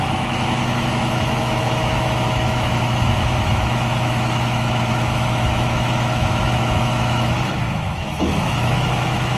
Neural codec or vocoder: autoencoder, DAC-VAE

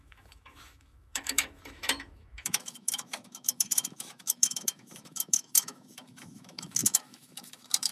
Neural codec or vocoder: autoencoder, DAC-VAE